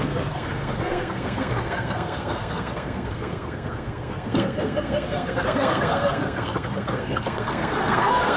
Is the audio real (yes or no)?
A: no